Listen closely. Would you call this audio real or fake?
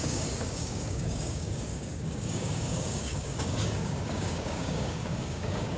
fake